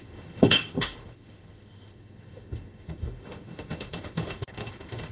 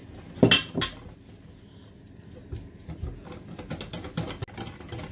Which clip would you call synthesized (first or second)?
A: first